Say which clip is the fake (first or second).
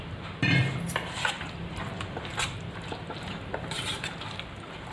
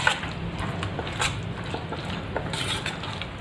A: first